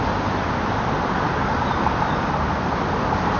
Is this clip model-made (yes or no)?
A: no